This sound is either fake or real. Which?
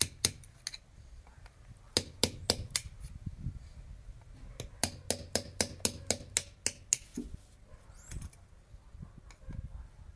real